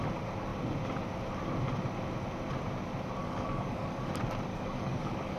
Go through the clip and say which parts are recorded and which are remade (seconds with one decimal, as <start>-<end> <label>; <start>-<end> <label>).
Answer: 0.0-3.2 recorded; 3.2-4.1 remade; 4.1-4.5 recorded; 4.5-5.4 remade